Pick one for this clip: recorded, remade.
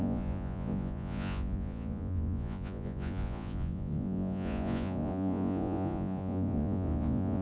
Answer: remade